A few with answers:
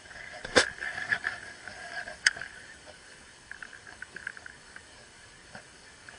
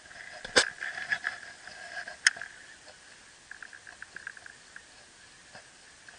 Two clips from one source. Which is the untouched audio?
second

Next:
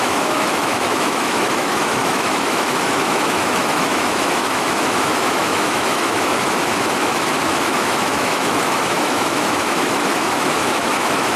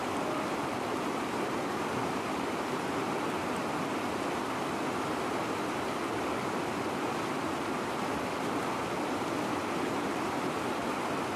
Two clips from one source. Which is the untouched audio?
second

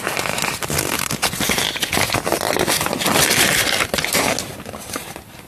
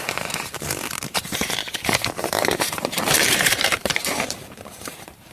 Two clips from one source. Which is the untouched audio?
first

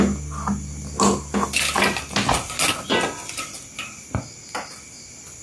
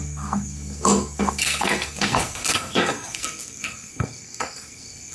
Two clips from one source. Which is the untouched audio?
first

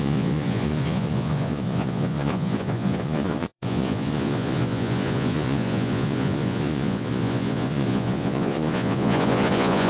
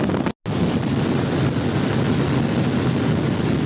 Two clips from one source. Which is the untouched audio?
second